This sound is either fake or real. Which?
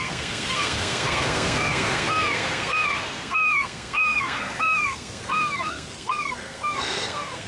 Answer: fake